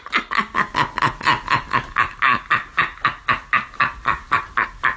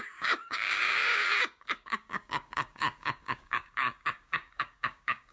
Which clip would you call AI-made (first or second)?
second